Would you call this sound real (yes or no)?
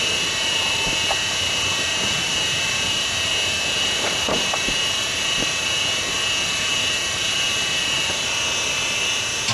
no